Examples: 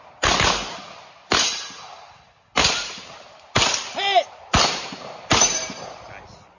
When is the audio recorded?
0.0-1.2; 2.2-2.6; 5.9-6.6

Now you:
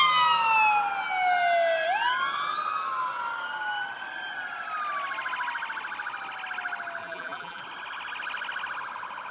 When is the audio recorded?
0.0-7.0; 7.6-9.3